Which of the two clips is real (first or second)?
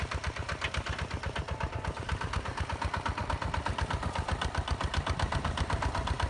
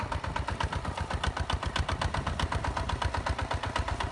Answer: second